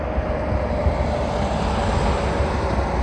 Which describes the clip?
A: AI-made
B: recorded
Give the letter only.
B